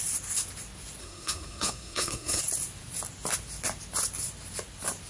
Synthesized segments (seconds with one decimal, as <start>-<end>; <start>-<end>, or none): 1.0-2.4